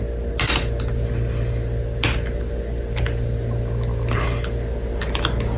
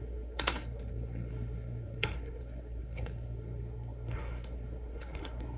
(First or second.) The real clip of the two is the first